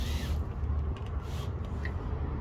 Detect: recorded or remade recorded